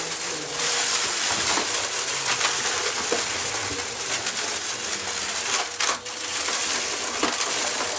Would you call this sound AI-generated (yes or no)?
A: no